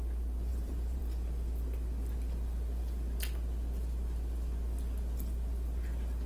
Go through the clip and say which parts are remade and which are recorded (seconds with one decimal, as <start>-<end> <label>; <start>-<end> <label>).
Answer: 0.0-0.5 recorded; 0.5-1.0 remade; 1.0-6.3 recorded